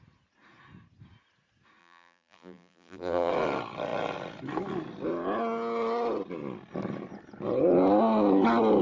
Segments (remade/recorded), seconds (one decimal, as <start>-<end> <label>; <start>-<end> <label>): 0.0-1.8 recorded; 1.8-3.3 remade; 3.3-8.8 recorded